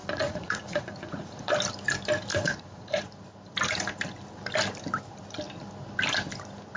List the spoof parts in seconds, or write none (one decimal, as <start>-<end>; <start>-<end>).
0.0-1.5; 2.3-3.0